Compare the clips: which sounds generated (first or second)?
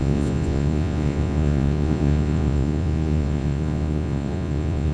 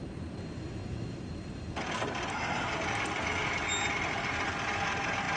first